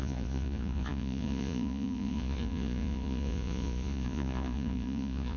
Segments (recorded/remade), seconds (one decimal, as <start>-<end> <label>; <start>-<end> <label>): 0.0-5.4 remade

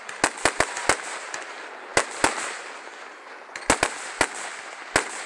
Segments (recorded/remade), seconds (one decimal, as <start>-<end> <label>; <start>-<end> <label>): 0.0-5.3 recorded

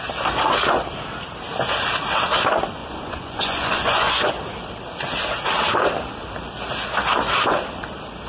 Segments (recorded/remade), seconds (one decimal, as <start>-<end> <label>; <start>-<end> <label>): 0.0-2.8 recorded; 2.8-4.3 remade; 4.3-8.3 recorded